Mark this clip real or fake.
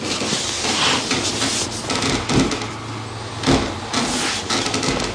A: real